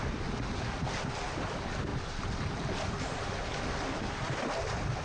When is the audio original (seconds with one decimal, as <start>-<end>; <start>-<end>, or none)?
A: 0.0-5.0